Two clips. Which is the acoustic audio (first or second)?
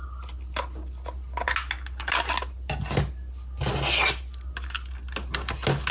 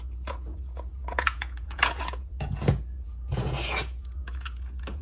first